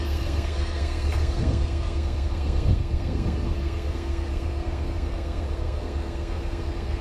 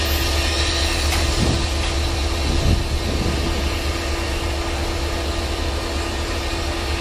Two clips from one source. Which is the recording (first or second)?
second